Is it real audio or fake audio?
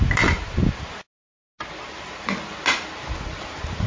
real